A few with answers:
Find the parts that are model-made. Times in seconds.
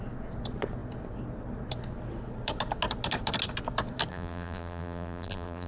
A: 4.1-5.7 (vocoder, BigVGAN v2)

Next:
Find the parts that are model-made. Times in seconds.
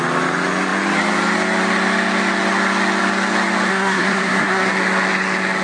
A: 3.7-4.7 (codec, SNAC)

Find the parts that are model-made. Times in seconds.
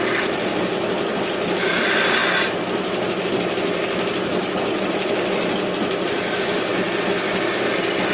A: none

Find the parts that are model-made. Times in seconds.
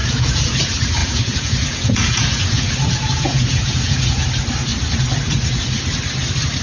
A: 0.0-0.6 (vocoder, Vocos); 1.0-4.3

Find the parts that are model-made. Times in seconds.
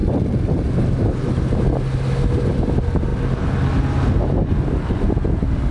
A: none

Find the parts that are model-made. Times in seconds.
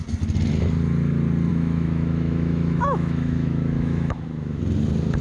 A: 1.5-4.6 (autoencoder, DAC-VAE)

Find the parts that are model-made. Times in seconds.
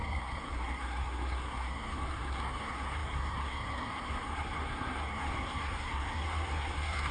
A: 0.0-7.1 (codec, SNAC)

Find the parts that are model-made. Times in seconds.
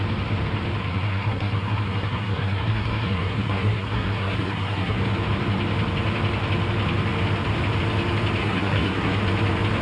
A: 0.8-5.0 (codec, SNAC); 8.4-9.2